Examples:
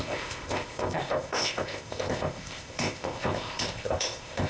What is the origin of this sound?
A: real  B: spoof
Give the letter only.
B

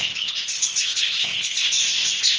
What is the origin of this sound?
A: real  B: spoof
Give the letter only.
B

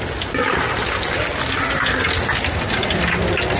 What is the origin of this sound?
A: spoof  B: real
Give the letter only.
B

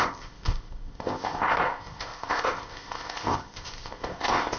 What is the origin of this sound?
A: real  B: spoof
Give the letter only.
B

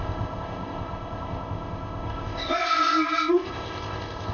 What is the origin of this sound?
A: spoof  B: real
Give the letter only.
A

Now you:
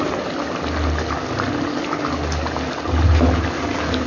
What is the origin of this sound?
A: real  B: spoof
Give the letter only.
A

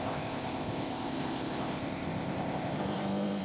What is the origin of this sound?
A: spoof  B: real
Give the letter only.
A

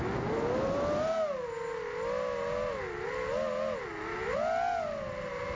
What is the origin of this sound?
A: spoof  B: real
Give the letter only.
B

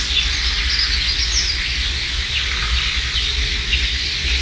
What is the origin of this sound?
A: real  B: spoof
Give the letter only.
A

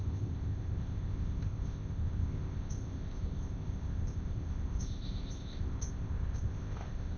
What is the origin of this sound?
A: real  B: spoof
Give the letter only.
B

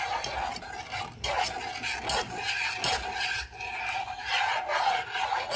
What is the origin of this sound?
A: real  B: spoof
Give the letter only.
A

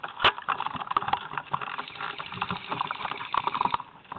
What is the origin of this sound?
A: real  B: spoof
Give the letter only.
A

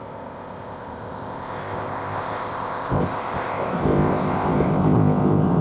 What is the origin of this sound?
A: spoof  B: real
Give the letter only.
A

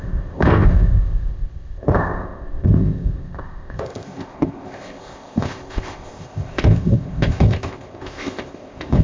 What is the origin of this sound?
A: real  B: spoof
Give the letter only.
B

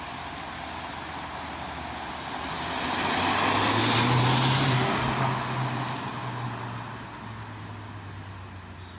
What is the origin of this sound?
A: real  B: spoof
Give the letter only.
A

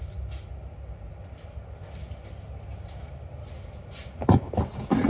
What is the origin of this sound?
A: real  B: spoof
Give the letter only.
A